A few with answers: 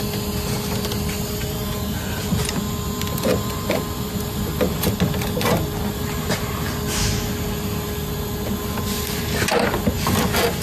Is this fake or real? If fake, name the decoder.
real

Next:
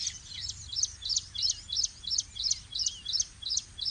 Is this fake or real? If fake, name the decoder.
real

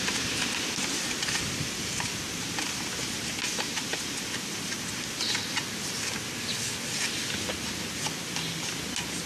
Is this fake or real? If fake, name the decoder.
real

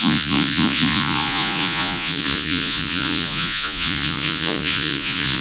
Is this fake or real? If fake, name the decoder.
fake, vocoder, Vocos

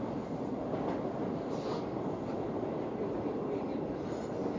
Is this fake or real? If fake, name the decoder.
real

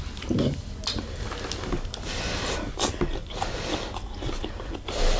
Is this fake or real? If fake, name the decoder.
real